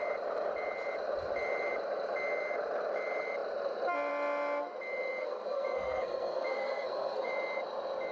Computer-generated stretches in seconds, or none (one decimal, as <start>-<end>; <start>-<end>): 5.2-7.3

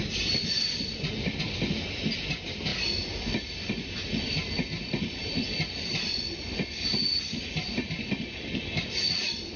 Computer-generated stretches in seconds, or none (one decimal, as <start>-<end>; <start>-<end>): none

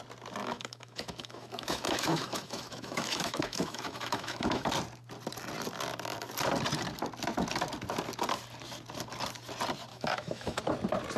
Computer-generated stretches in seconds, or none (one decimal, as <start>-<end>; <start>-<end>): 0.4-4.7; 9.9-10.6

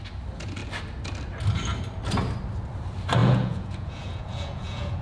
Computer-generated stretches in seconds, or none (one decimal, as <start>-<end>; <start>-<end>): 3.2-5.0

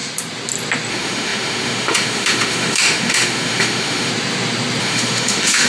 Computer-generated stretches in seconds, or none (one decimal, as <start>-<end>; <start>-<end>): 0.9-4.1; 4.8-5.7

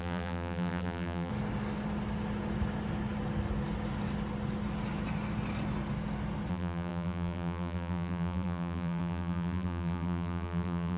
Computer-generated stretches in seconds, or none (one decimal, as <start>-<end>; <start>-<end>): 0.0-1.3; 6.5-11.0

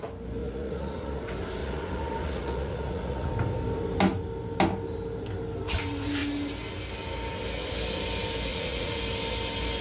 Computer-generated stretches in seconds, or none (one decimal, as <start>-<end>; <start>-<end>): 0.4-1.2; 1.6-3.3; 8.5-9.0